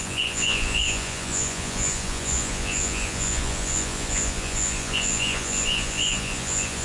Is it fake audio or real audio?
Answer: fake